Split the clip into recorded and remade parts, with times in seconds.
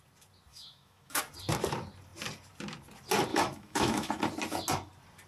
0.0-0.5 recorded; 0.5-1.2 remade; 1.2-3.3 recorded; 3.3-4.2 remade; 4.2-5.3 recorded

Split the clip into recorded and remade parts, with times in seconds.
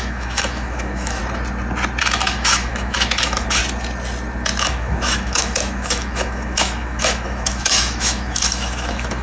0.0-1.2 remade; 1.2-2.0 recorded; 2.0-3.6 remade; 3.6-4.6 recorded; 4.6-9.2 remade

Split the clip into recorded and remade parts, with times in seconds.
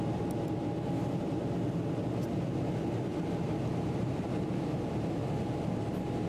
0.0-6.3 recorded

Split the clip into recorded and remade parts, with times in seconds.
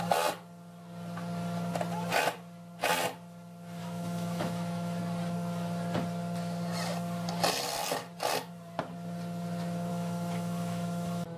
0.0-3.8 recorded; 3.8-5.0 remade; 5.0-9.9 recorded; 9.9-11.4 remade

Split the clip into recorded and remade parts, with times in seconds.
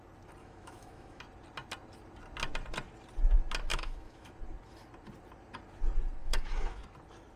0.0-0.4 recorded; 0.4-1.2 remade; 1.2-3.7 recorded; 3.7-4.3 remade; 4.3-6.2 recorded; 6.2-6.8 remade; 6.8-7.4 recorded